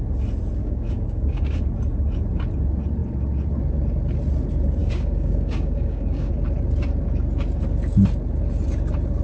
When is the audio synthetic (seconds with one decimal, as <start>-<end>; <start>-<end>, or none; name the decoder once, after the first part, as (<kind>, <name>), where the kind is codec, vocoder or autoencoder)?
0.6-1.6 (codec, DAC); 4.8-6.3

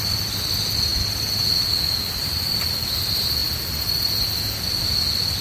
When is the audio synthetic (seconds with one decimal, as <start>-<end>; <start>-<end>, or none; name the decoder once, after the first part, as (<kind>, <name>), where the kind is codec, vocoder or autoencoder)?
none